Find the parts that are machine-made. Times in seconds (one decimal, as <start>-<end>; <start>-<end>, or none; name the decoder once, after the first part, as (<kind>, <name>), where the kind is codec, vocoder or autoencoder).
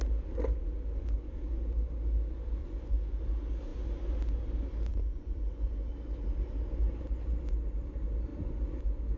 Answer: 2.6-3.2 (vocoder, Vocos); 4.9-5.9